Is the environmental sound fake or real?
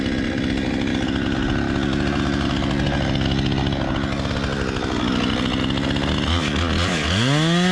real